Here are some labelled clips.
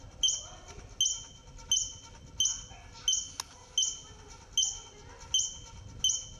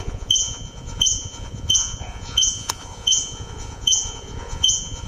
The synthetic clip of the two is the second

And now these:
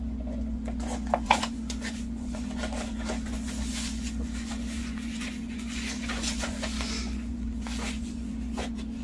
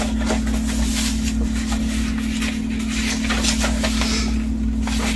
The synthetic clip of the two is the first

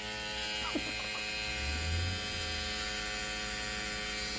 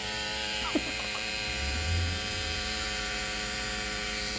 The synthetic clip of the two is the second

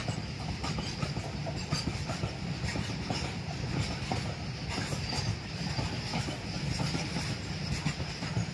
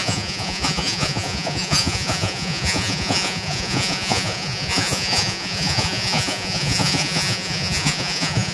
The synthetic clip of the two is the second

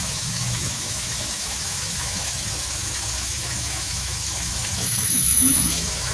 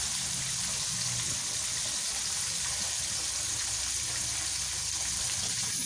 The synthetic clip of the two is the first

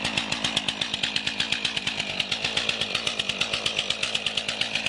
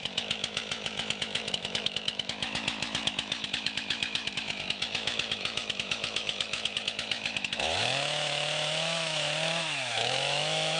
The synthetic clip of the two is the second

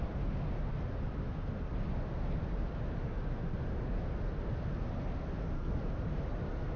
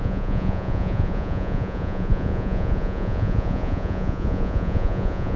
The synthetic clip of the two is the second